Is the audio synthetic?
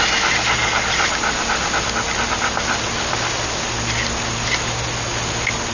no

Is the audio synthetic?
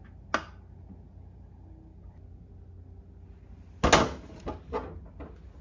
no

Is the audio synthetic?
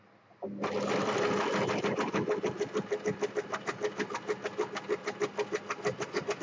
no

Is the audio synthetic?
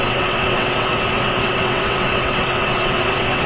yes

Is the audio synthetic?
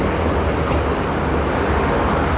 no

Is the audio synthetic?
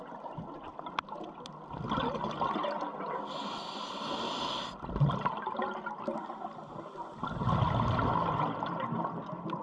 no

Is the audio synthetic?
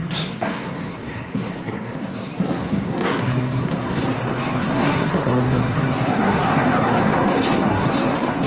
yes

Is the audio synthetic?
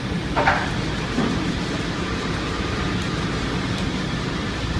yes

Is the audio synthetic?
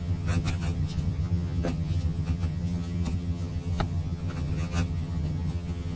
yes